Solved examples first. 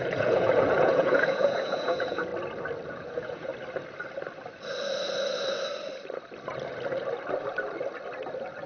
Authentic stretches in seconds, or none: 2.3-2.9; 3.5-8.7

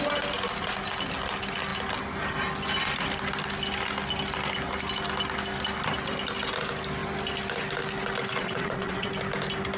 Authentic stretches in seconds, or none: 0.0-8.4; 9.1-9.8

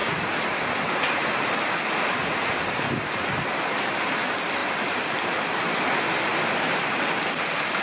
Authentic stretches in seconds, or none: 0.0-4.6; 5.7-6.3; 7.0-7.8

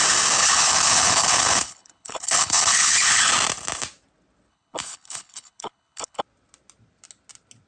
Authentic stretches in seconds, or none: 0.0-0.4; 3.3-4.5; 6.2-7.7